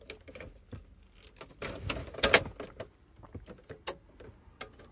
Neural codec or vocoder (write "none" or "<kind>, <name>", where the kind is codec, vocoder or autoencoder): none